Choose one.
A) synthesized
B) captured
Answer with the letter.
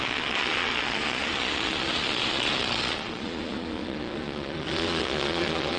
A